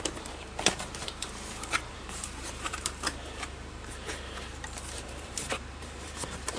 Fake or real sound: fake